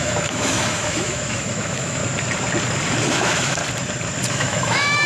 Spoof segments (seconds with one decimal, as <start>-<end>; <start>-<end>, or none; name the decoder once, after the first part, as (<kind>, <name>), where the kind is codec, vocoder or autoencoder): 0.0-2.0 (autoencoder, DAC-VAE); 3.1-3.6; 4.3-5.1